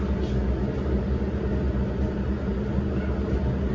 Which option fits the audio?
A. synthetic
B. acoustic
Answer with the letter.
B